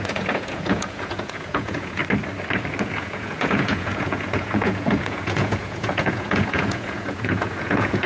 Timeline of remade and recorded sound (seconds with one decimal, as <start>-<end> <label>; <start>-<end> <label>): 0.0-2.0 remade; 2.0-2.8 recorded; 2.8-8.1 remade